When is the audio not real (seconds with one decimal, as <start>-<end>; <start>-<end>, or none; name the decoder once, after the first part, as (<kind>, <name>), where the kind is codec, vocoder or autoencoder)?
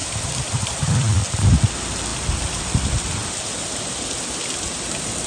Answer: 0.0-0.9 (vocoder, BigVGAN v2)